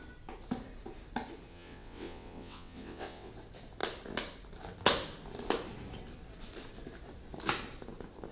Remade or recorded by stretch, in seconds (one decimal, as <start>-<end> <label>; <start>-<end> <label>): 0.0-1.5 recorded; 1.5-3.3 remade; 3.3-8.3 recorded

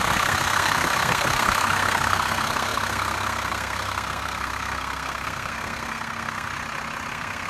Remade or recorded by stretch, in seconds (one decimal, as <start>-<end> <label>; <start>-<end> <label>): 0.0-6.5 remade; 6.5-7.1 recorded; 7.1-7.5 remade